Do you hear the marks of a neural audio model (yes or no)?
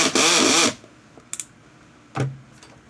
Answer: no